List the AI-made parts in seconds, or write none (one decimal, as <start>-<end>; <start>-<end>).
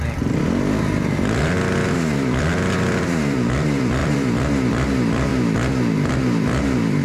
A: 0.0-5.3; 6.1-7.0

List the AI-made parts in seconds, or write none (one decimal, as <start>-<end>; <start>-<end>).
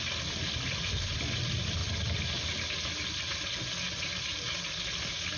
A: none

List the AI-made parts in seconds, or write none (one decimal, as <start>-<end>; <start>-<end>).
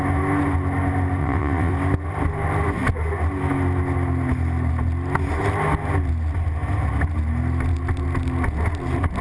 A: 1.2-1.7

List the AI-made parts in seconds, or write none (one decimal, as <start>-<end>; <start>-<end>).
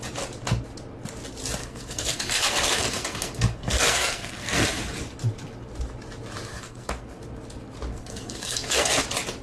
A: 1.6-4.8; 6.5-7.2; 7.9-9.0